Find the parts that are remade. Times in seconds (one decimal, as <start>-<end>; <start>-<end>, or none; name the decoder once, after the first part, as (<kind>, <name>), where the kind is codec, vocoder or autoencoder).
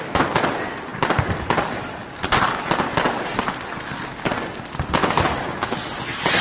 none